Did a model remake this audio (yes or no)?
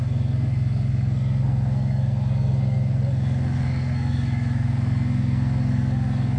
yes